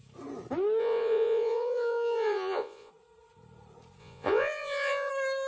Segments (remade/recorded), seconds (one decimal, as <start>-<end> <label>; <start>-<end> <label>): 0.0-0.8 recorded; 0.8-2.9 remade; 2.9-4.0 recorded; 4.0-5.1 remade; 5.1-5.5 recorded